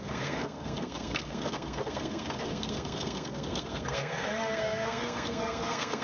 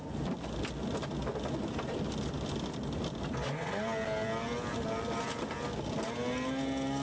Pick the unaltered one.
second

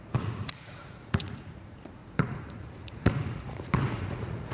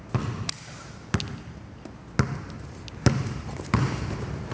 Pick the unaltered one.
second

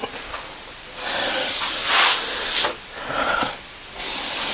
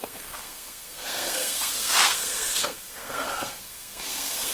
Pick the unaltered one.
first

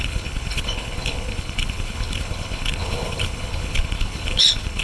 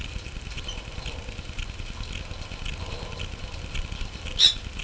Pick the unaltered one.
second